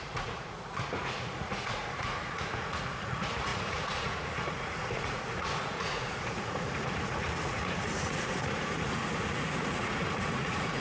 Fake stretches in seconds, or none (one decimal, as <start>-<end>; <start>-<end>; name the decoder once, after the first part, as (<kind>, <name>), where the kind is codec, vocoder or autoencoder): 0.0-10.8 (vocoder, Vocos)